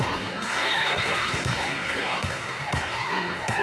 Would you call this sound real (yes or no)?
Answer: no